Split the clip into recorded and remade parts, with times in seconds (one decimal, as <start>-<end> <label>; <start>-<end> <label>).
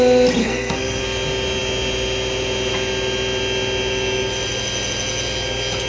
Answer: 0.0-0.4 recorded; 0.4-1.0 remade; 1.0-5.9 recorded